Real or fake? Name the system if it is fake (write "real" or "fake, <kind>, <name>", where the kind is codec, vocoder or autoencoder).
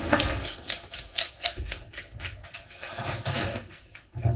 fake, codec, SNAC